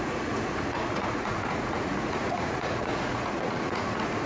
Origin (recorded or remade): remade